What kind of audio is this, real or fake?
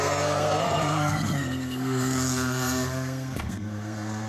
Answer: fake